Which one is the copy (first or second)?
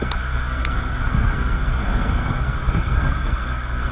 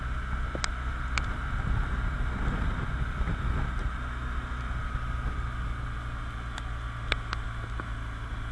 first